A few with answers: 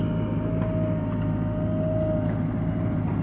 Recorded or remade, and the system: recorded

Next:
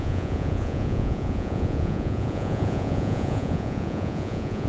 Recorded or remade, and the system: remade, vocoder, Vocos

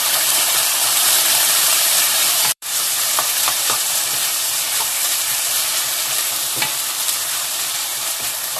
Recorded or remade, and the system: remade, vocoder, BigVGAN v2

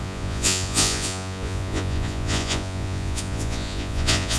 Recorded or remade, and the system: remade, vocoder, Vocos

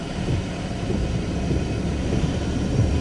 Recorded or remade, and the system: remade, vocoder, BigVGAN v2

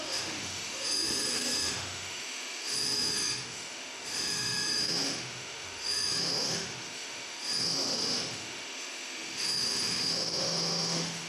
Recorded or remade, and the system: remade, autoencoder, DAC-VAE